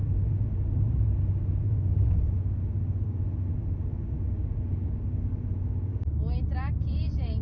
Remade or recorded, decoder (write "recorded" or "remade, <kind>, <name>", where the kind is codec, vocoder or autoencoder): recorded